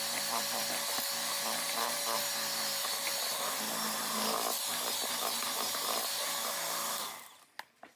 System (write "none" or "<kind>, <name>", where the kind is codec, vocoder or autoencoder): none